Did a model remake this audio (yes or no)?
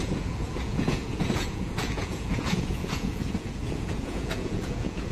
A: yes